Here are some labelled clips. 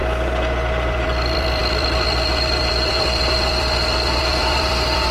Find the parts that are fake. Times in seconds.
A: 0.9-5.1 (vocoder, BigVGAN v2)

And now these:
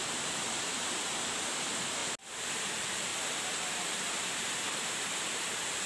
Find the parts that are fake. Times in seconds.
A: 0.0-2.0 (vocoder, BigVGAN v2); 2.6-3.1; 3.7-5.9

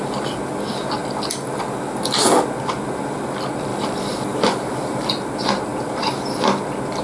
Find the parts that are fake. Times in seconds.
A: 3.7-5.1 (vocoder, BigVGAN v2)

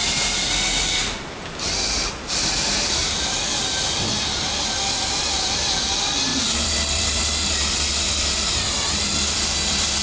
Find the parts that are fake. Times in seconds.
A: 6.3-8.5 (vocoder, BigVGAN v2)

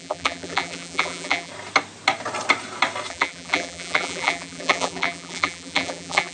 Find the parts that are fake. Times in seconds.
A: 0.0-1.5 (vocoder, BigVGAN v2); 3.1-6.3